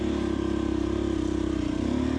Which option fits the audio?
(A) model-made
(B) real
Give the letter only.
A